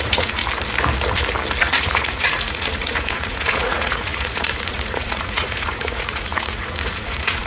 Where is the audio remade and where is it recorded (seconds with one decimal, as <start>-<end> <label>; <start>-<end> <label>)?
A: 0.0-0.4 remade; 0.4-1.6 recorded; 1.6-7.5 remade